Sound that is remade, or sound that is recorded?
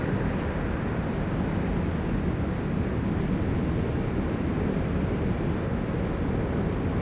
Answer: recorded